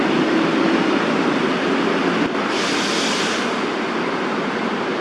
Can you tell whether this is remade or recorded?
recorded